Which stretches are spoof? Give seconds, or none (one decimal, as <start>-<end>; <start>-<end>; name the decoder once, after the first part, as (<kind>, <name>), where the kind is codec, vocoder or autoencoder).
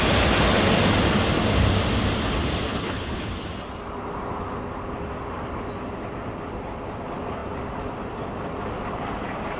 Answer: 2.7-3.2 (codec, HILCodec)